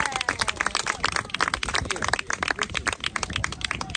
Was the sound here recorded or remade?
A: recorded